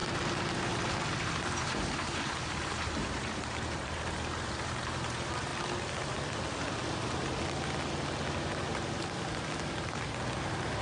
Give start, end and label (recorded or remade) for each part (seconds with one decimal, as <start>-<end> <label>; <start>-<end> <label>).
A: 0.0-1.2 recorded; 1.2-5.5 remade; 5.5-10.8 recorded